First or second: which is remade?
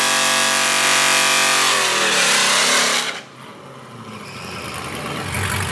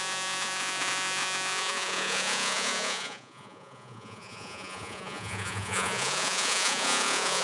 second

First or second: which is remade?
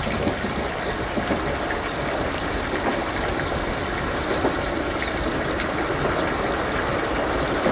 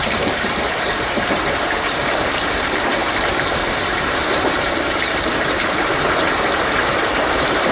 second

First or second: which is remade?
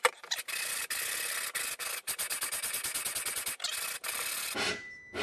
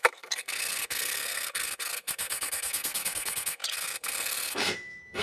second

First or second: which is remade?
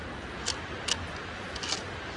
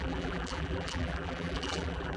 second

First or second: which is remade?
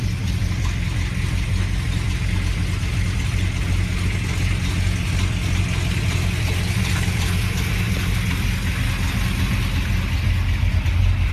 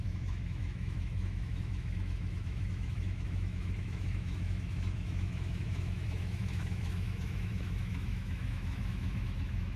second